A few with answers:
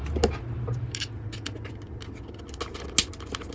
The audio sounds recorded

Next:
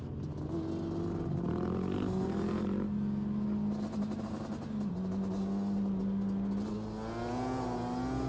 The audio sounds recorded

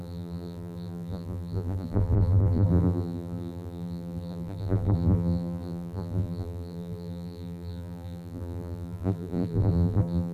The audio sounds remade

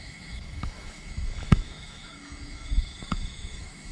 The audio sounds remade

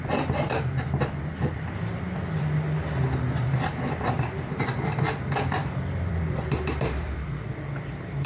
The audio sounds remade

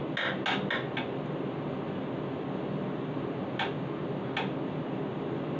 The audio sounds recorded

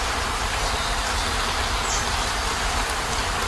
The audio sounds recorded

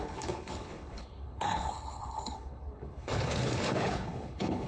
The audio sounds remade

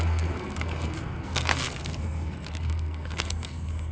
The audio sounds remade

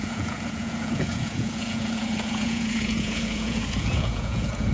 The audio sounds remade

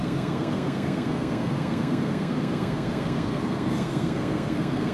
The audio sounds remade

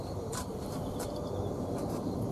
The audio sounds remade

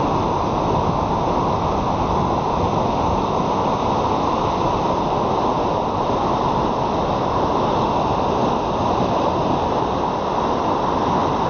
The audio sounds recorded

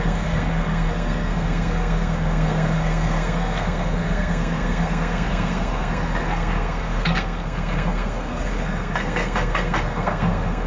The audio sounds remade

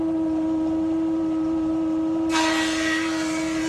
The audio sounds remade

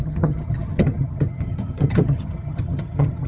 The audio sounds remade